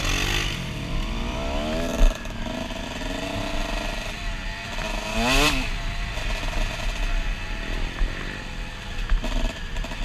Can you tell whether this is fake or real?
real